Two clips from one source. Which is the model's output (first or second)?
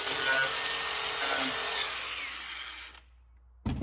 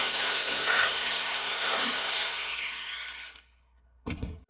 second